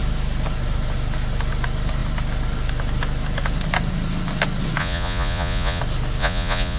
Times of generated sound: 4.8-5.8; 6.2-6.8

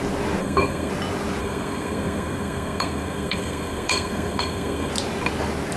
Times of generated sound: 0.4-0.9; 1.4-4.9

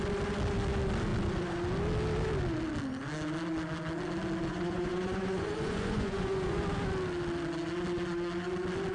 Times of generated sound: 4.5-6.6

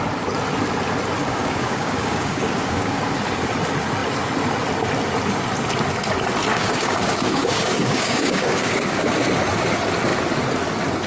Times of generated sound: 1.2-3.0; 6.5-9.1

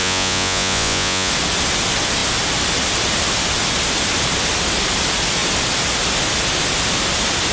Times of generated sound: 0.0-1.3

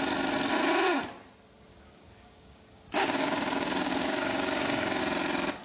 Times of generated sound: 1.7-5.0

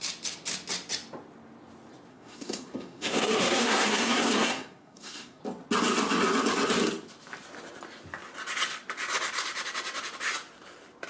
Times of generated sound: 2.1-5.4